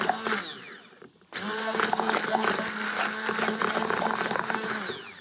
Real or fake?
real